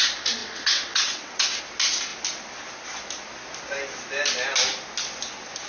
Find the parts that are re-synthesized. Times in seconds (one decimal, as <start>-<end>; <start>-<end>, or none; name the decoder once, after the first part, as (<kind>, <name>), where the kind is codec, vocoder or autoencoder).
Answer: 0.4-1.6 (vocoder, WaveNeXt)